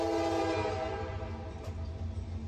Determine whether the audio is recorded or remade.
recorded